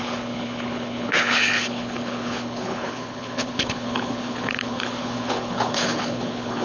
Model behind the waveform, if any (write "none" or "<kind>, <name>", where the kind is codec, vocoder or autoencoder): codec, HILCodec